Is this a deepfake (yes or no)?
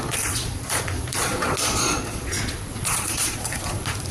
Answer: yes